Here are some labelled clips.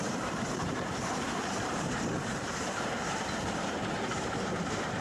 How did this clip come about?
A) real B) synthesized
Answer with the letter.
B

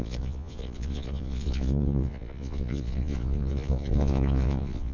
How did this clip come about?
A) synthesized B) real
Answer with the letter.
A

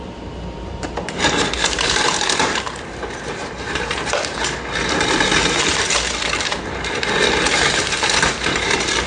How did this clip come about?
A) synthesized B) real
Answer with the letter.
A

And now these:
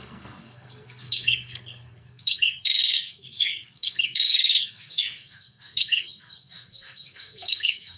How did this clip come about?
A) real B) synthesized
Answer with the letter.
B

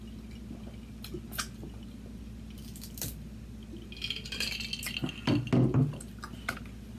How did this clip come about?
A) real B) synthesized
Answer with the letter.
A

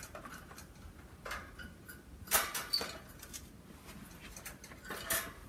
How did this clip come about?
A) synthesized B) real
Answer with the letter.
B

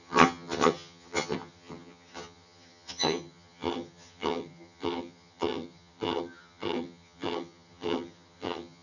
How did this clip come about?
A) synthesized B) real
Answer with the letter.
A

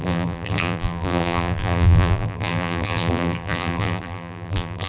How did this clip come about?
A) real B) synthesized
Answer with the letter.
B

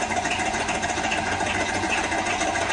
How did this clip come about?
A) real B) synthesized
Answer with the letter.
B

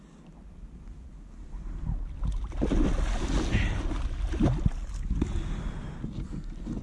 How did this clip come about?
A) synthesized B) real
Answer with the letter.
B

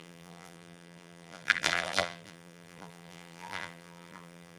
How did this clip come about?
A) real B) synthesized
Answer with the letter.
B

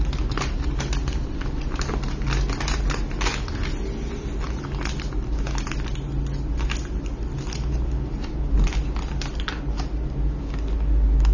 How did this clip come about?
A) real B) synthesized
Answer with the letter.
A